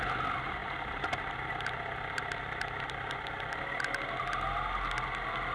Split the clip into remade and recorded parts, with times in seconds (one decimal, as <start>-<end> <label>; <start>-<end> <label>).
0.0-5.5 recorded